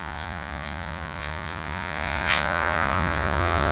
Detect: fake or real fake